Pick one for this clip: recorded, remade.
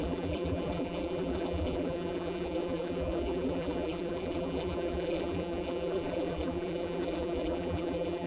remade